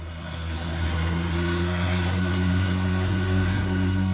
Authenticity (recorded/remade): remade